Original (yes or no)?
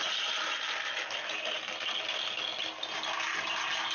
yes